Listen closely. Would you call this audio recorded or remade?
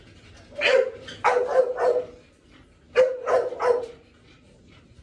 recorded